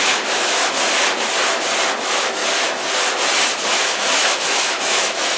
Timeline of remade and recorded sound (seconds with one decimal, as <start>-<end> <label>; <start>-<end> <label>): 0.0-0.6 remade; 0.6-2.0 recorded; 2.0-2.4 remade; 2.4-3.7 recorded; 3.7-5.4 remade